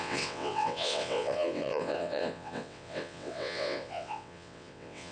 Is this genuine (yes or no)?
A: no